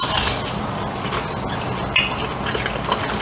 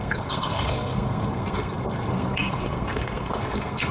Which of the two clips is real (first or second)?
first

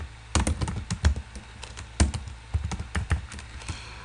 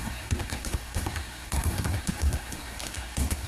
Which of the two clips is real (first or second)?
first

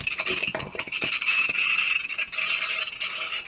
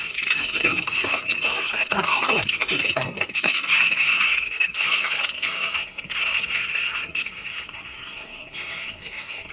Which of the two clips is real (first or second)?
first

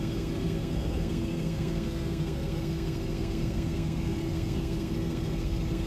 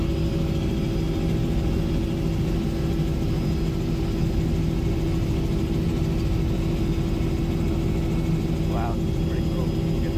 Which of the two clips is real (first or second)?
second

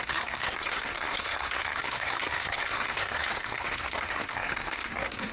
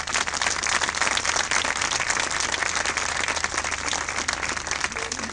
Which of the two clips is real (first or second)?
second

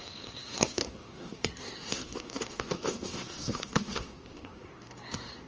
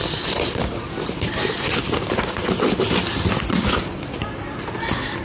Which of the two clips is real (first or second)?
second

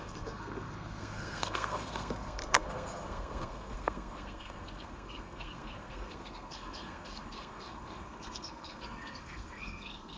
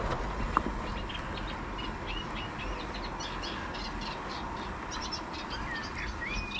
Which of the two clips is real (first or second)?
second